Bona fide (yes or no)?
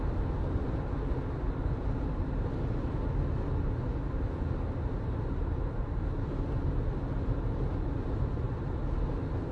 yes